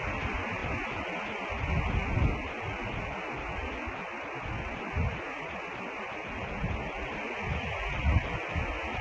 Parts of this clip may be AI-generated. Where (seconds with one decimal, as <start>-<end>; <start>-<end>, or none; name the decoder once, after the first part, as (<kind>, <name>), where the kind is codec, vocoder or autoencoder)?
5.0-5.7 (vocoder, Vocos); 7.5-8.2